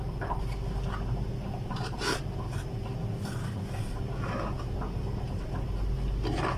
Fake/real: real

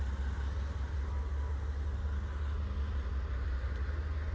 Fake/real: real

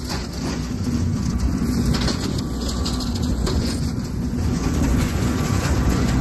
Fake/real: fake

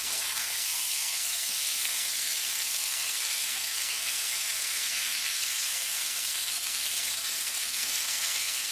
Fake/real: fake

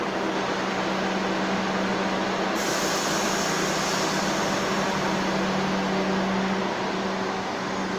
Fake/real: real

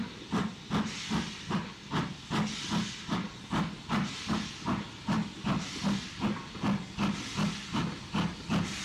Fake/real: real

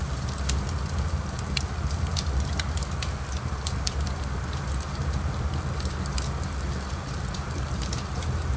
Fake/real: fake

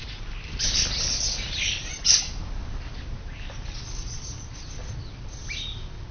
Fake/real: real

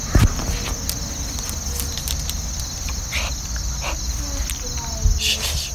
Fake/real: real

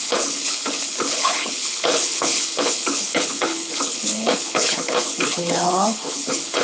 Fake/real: fake